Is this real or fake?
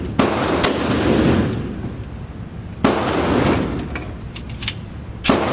real